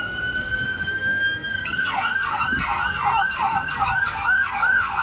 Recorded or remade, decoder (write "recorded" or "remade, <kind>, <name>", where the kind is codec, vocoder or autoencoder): remade, codec, SNAC